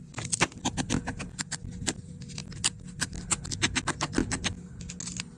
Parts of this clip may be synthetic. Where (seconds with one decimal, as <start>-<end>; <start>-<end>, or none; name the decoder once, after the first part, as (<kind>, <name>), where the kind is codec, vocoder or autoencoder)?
0.0-2.4 (vocoder, BigVGAN v2)